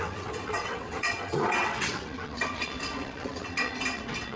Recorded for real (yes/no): no